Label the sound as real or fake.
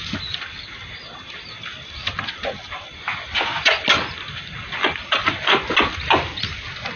real